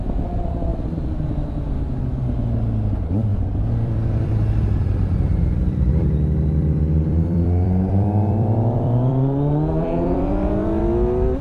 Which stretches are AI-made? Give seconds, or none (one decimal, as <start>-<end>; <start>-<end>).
3.3-6.1; 6.6-10.8

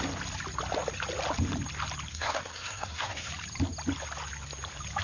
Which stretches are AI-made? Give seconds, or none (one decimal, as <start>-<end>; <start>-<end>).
2.1-3.3

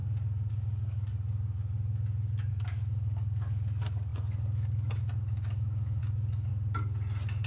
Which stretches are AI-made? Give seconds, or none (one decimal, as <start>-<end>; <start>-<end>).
0.5-1.1; 2.5-6.5

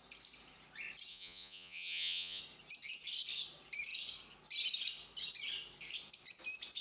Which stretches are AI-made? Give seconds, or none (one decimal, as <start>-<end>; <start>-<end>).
1.1-2.4

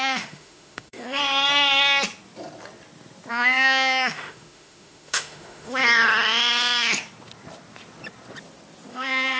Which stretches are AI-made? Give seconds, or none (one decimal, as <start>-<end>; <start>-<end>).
0.0-1.2; 3.3-5.8; 8.9-9.4

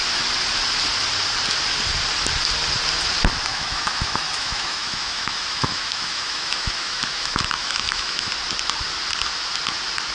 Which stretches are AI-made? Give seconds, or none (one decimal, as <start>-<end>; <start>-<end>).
3.5-8.3